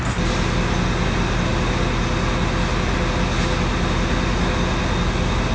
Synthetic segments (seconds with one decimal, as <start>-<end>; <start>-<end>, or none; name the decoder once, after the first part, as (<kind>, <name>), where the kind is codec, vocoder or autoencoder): none